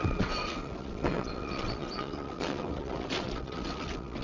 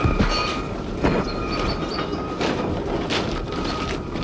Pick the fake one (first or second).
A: first